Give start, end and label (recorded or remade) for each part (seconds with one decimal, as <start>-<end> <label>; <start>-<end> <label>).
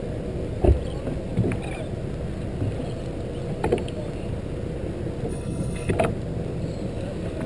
0.0-5.3 recorded; 5.3-5.9 remade; 5.9-7.5 recorded